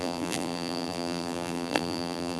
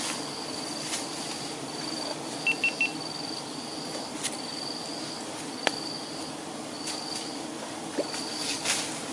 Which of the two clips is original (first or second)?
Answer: second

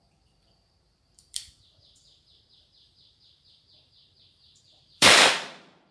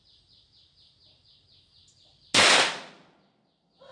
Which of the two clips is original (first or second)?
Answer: second